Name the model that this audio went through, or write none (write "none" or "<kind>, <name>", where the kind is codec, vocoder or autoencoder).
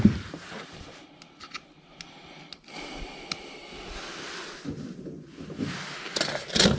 none